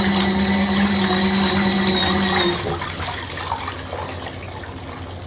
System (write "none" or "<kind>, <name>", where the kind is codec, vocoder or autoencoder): none